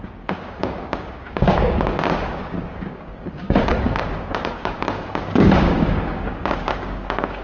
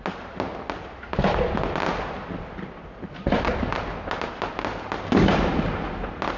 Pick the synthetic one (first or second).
first